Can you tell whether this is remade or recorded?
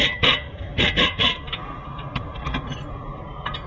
remade